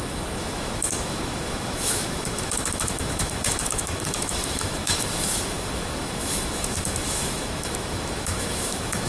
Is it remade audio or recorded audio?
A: remade